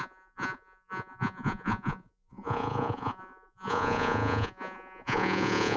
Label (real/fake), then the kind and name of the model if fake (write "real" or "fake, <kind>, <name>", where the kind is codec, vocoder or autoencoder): fake, vocoder, Vocos